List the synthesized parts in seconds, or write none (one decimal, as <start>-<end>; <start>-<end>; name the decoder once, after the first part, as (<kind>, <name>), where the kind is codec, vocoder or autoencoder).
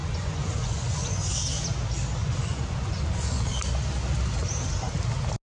0.0-1.3 (vocoder, Vocos); 2.2-3.5